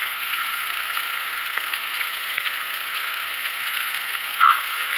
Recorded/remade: remade